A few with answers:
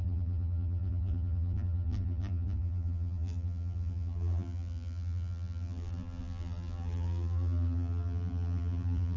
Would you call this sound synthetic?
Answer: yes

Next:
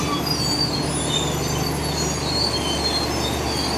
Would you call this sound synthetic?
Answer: no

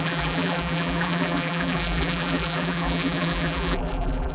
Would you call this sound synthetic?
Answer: yes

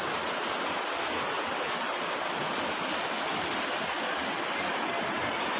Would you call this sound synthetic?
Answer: no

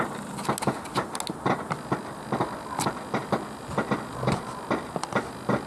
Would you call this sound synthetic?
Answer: no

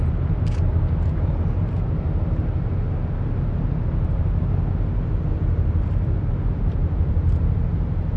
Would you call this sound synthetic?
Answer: yes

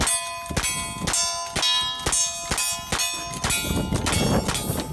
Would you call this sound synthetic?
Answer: no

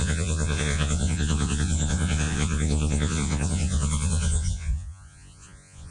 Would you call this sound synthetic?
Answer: yes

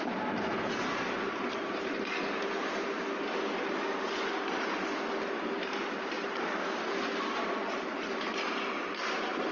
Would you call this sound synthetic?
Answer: no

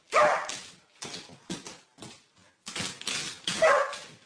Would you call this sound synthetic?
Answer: no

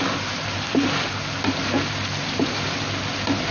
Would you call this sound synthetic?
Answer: no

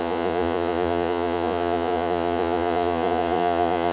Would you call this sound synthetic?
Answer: yes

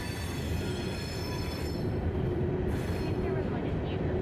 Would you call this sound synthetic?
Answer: yes